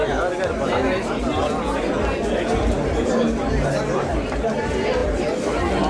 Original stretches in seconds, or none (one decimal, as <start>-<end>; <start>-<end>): 0.0-5.9

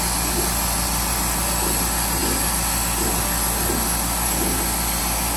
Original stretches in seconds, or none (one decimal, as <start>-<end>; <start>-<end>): 0.0-5.4